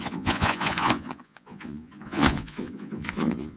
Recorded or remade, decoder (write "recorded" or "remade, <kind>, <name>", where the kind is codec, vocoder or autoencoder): remade, vocoder, Vocos